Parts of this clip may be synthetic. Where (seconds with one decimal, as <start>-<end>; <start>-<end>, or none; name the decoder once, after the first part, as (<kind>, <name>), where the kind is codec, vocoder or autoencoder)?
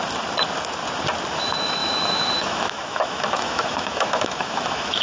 1.3-5.0 (autoencoder, DAC-VAE)